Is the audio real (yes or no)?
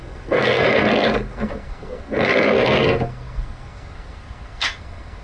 no